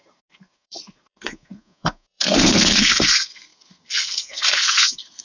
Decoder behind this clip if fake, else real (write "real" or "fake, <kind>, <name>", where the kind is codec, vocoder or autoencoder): fake, codec, SNAC